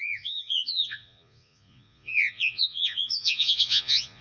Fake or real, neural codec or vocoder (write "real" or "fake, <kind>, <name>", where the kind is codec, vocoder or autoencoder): fake, vocoder, Vocos